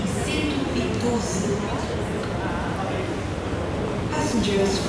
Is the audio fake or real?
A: real